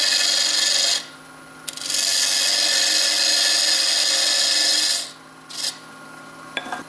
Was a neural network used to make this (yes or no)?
no